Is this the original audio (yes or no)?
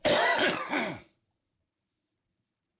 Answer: no